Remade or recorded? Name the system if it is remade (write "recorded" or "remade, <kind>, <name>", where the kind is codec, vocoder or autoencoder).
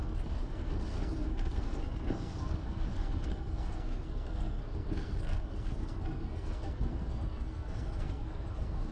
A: remade, codec, SNAC